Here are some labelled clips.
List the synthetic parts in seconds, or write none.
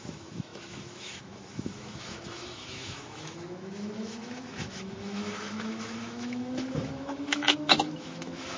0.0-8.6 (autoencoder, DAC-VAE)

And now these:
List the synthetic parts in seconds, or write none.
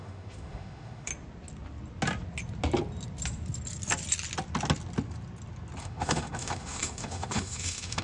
0.0-1.1 (autoencoder, DAC-VAE); 5.8-8.0